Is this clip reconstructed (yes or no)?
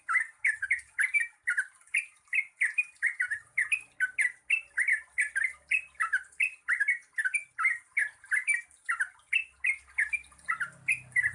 no